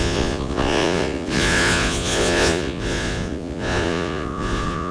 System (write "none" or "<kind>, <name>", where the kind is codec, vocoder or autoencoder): vocoder, Vocos